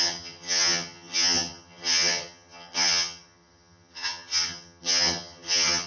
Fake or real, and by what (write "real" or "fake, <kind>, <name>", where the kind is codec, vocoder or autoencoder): fake, vocoder, HiFi-GAN